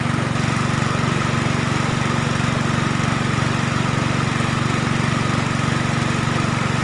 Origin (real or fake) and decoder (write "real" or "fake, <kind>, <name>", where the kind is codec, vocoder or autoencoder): real